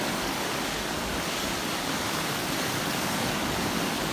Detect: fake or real fake